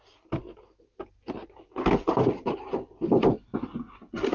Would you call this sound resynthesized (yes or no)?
no